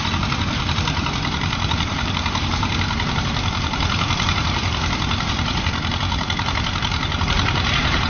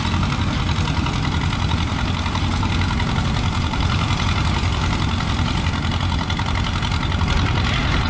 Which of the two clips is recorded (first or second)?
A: second